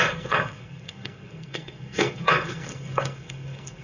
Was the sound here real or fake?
fake